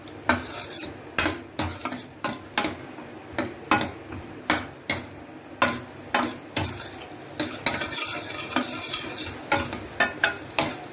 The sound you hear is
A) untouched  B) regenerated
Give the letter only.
A